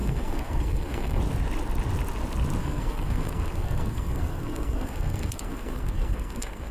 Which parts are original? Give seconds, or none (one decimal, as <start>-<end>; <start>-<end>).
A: 1.2-2.6